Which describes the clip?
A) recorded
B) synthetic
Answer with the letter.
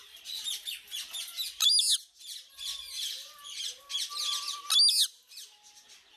A